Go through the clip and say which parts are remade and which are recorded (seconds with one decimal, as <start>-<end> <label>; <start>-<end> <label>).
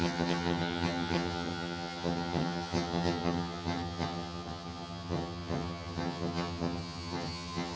0.0-7.8 remade